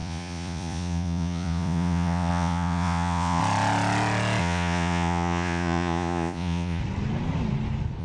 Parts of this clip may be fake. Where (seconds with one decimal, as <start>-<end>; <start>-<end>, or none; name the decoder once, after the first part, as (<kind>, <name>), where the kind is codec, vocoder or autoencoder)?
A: 0.0-3.4 (vocoder, Vocos); 4.4-6.8